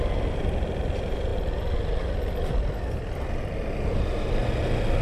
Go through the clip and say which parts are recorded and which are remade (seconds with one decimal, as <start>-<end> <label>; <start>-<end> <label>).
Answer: 0.0-5.0 recorded